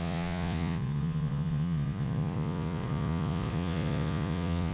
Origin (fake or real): fake